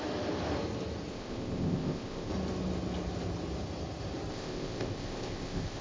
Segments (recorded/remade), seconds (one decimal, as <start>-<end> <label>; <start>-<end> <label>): 0.0-1.1 recorded; 1.1-2.3 remade; 2.3-4.3 recorded; 4.3-5.8 remade